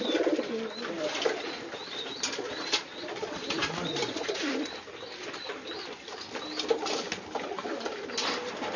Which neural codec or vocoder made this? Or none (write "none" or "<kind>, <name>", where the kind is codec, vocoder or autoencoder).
none